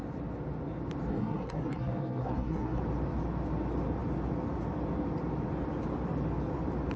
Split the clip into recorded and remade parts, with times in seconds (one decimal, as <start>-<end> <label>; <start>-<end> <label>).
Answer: 0.0-1.1 recorded; 1.1-2.8 remade; 2.8-7.0 recorded